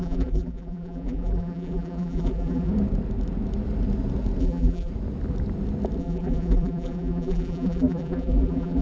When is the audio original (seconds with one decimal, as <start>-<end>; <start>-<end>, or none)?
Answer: 2.7-4.4; 4.9-6.0